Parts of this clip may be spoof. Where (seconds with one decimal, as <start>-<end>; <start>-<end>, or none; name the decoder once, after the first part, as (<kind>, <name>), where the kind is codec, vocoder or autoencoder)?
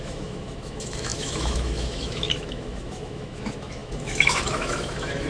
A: 0.0-5.3 (autoencoder, DAC-VAE)